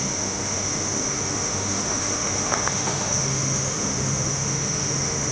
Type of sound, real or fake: fake